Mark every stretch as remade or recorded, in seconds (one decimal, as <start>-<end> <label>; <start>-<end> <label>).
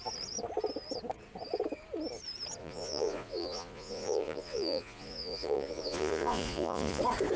0.0-2.6 recorded; 2.6-7.0 remade; 7.0-7.4 recorded